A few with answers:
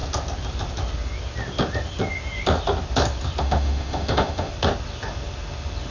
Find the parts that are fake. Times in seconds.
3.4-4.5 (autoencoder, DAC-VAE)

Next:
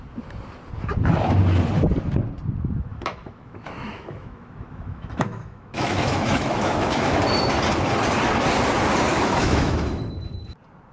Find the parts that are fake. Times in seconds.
2.9-7.2 (autoencoder, DAC-VAE); 9.1-10.1

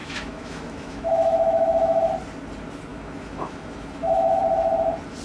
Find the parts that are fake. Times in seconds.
0.0-2.1 (autoencoder, DAC-VAE); 2.9-4.4

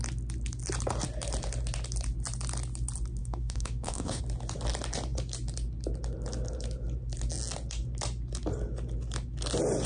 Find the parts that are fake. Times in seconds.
3.2-4.2 (autoencoder, DAC-VAE)

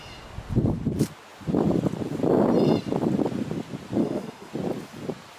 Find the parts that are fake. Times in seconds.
4.0-4.5 (autoencoder, DAC-VAE)

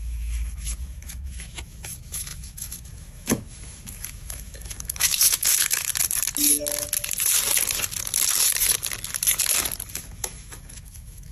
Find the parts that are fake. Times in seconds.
0.0-5.9 (autoencoder, DAC-VAE); 9.9-11.3

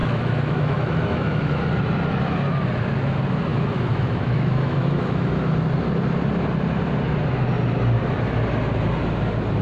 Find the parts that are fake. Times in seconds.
0.0-1.6 (autoencoder, DAC-VAE); 3.5-5.3